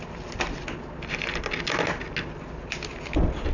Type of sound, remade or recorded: recorded